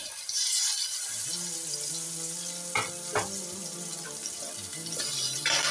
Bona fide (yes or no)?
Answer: yes